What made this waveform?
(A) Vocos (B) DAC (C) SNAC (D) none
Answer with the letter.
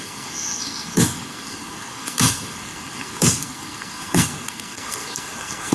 C